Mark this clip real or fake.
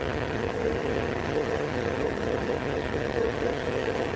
fake